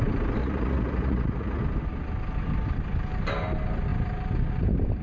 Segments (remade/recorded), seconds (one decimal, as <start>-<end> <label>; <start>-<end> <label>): 0.0-0.4 recorded; 0.4-1.6 remade; 1.6-5.0 recorded